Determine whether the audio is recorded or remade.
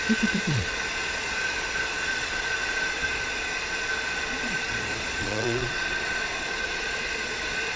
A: remade